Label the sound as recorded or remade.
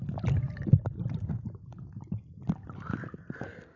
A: recorded